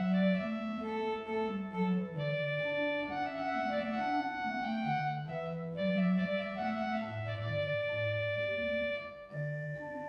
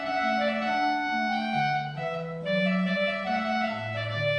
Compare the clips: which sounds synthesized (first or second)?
first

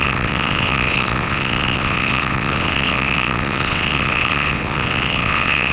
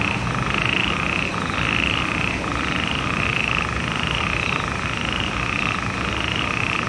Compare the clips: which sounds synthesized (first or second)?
first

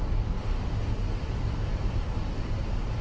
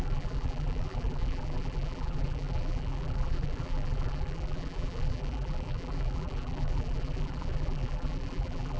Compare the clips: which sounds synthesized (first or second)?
second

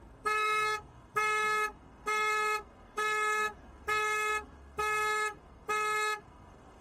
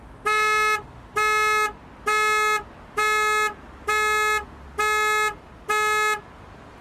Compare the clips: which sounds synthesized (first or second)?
first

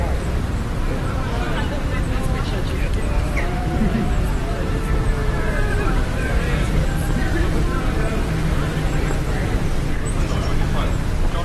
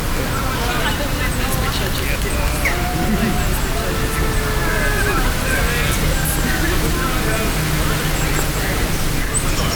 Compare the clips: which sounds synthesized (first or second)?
first